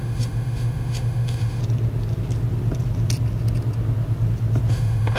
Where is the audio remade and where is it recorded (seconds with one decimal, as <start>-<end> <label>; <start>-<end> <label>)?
0.0-1.6 remade; 1.6-4.7 recorded; 4.7-5.2 remade